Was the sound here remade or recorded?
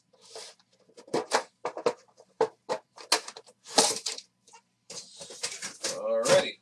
recorded